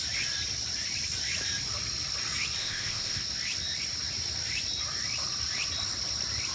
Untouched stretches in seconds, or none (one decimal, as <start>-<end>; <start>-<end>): 0.0-2.6; 3.2-6.5